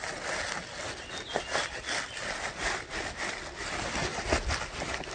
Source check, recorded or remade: recorded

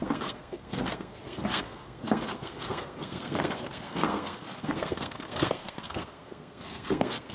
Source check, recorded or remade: remade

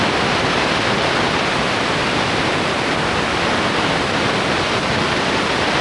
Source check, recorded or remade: recorded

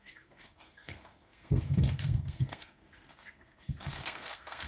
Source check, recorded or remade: remade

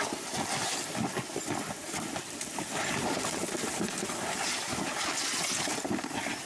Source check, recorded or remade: recorded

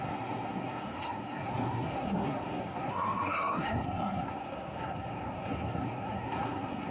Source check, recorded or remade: remade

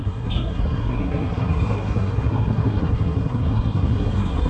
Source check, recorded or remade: remade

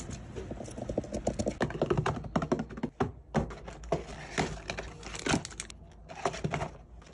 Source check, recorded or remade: recorded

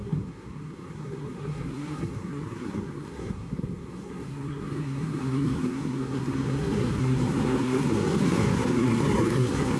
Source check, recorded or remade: remade